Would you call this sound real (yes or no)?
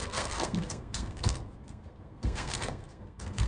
no